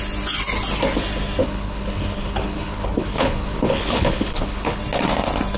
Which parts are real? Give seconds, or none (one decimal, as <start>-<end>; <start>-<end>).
0.0-1.4; 4.8-5.6